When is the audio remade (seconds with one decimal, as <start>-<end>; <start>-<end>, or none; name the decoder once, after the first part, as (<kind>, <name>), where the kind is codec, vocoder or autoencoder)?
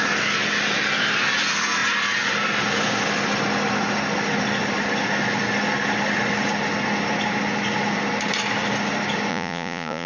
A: 9.3-10.1 (vocoder, Vocos)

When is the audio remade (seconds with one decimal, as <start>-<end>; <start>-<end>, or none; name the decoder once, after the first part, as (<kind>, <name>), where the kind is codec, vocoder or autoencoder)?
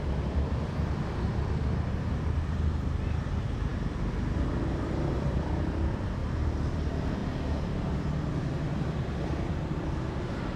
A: 0.0-6.2 (vocoder, BigVGAN v2); 6.7-7.2; 8.0-10.6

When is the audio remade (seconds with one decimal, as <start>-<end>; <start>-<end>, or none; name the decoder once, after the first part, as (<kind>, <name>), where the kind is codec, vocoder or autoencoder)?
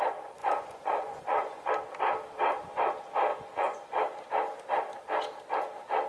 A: 0.4-1.7 (vocoder, Vocos); 3.3-3.9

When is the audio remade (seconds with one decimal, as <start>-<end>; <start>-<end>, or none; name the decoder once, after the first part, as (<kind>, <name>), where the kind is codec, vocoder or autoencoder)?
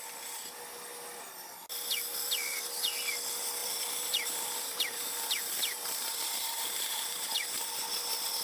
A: 3.6-7.6 (vocoder, BigVGAN v2)